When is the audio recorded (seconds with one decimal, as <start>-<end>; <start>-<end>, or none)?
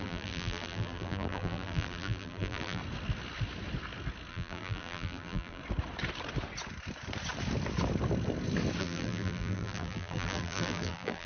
2.8-4.3; 5.6-8.8